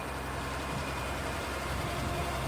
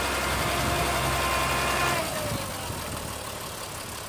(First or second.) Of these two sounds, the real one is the second